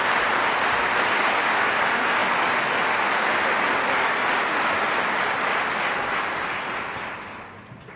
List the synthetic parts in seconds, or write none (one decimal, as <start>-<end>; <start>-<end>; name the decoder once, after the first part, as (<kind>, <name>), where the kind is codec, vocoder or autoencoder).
none